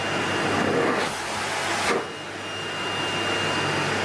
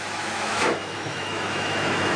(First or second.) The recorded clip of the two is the first